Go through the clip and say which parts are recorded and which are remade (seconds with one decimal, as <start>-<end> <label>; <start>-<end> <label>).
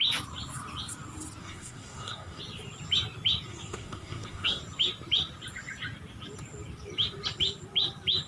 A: 0.0-1.4 recorded; 1.4-2.4 remade; 2.4-3.5 recorded; 3.5-4.6 remade; 4.6-8.3 recorded